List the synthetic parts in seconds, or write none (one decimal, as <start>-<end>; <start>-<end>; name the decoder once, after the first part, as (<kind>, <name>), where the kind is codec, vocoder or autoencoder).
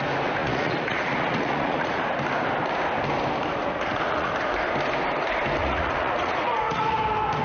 0.4-2.0 (vocoder, Vocos); 3.6-4.3; 5.6-7.0